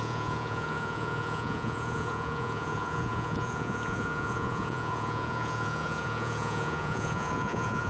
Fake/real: fake